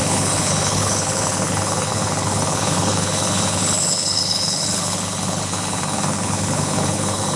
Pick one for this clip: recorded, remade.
remade